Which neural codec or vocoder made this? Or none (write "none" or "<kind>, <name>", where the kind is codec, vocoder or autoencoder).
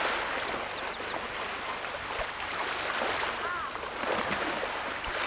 none